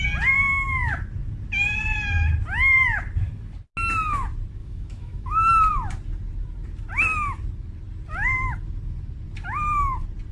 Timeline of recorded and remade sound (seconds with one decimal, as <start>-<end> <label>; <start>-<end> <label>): 0.0-4.6 recorded; 4.6-5.5 remade; 5.5-10.3 recorded